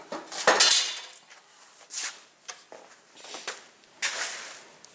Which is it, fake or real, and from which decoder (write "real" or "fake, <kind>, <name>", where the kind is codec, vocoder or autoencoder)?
real